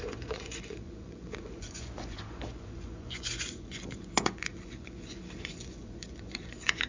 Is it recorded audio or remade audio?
remade